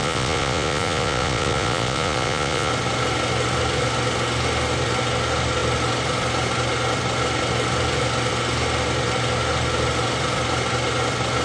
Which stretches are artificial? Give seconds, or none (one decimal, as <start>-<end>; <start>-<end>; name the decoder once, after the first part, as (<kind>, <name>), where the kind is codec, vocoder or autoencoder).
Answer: 0.0-2.7 (vocoder, Vocos)

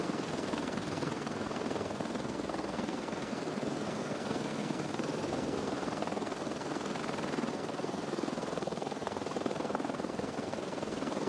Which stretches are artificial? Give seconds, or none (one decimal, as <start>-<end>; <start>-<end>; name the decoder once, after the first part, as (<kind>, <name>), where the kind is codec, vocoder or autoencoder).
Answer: 0.0-7.0 (codec, SNAC); 7.5-11.3

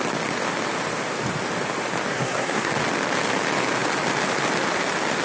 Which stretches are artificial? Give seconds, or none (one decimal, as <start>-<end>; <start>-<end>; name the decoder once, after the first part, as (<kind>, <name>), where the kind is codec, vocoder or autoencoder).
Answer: 2.1-2.7 (codec, SNAC)

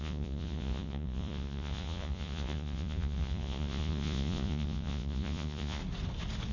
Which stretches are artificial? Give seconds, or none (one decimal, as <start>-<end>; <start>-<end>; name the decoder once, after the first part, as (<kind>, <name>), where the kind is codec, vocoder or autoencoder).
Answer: 0.0-5.8 (vocoder, Vocos)

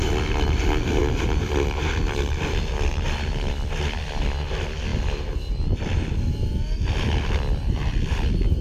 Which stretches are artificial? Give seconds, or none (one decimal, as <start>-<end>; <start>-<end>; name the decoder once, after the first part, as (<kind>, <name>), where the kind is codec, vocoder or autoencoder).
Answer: none

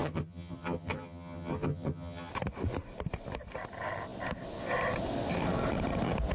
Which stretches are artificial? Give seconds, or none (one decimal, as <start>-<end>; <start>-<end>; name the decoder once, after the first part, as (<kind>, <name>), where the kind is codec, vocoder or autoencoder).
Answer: 0.0-2.3 (vocoder, HiFi-GAN)

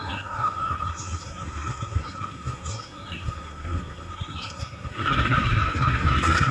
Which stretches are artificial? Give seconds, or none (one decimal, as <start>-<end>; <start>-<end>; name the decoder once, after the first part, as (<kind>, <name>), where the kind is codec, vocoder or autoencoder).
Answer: 0.0-6.5 (codec, SNAC)

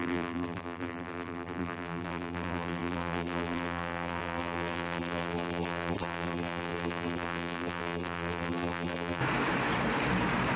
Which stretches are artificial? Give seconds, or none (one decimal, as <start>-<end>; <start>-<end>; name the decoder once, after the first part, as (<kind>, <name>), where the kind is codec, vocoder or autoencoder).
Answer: 0.0-9.2 (vocoder, BigVGAN v2)